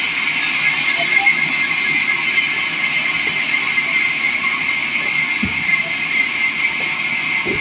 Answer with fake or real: real